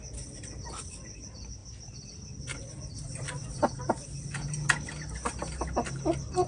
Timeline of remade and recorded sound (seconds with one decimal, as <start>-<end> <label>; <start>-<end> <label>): 0.0-6.5 recorded